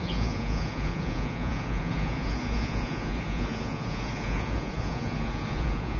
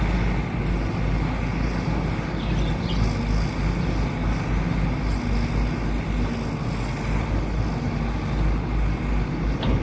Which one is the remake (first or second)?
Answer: first